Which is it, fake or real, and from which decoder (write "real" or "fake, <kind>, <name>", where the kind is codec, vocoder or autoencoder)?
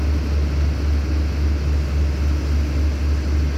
real